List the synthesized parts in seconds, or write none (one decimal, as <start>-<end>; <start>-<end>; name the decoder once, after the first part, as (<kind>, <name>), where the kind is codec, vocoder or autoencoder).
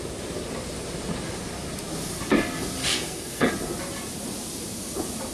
2.8-3.5 (codec, SNAC)